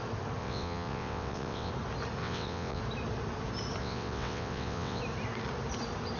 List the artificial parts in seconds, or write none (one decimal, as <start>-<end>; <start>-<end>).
0.4-1.7; 2.2-2.8; 3.8-5.0